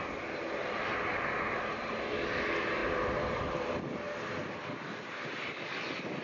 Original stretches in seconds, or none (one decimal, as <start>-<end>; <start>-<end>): 0.0-6.2